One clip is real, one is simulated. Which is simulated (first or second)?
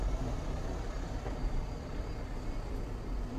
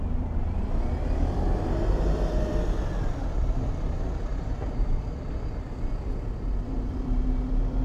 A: second